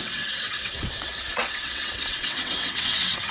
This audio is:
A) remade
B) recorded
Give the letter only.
A